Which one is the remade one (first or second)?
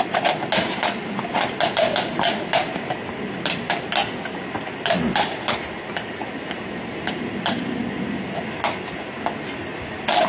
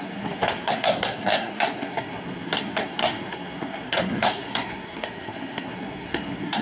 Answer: second